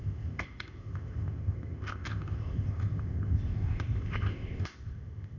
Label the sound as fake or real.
fake